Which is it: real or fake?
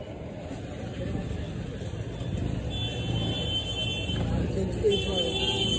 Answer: real